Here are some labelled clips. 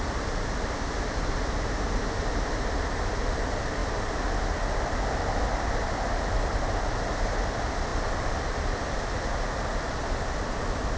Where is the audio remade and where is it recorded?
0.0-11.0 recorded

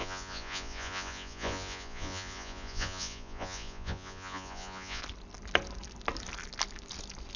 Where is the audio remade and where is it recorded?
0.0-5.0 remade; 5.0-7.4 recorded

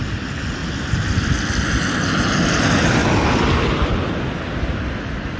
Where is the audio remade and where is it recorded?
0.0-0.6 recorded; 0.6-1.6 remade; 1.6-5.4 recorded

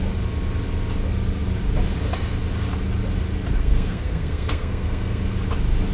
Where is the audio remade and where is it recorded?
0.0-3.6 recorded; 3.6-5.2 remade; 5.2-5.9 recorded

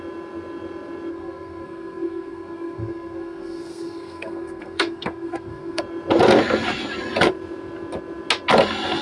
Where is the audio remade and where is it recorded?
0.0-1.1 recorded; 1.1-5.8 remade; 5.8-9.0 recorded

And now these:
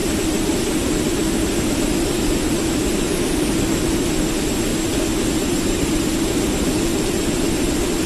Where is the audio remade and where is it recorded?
0.0-0.5 remade; 0.5-6.9 recorded; 6.9-8.1 remade

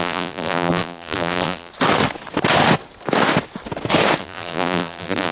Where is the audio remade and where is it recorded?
0.0-1.7 remade; 1.7-4.2 recorded; 4.2-5.3 remade